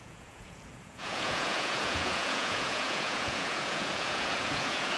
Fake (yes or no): yes